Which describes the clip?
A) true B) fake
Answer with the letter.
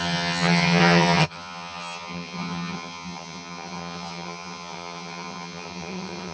B